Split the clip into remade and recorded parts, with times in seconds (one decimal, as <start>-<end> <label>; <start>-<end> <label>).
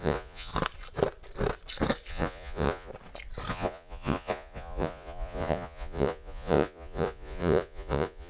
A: 0.0-0.5 remade; 0.5-2.1 recorded; 2.1-2.9 remade; 2.9-3.5 recorded; 3.5-8.3 remade